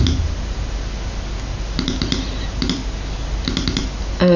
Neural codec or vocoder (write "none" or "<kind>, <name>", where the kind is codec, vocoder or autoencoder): none